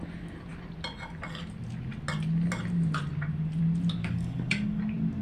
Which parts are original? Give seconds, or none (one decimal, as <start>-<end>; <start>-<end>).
0.0-4.0; 4.8-5.2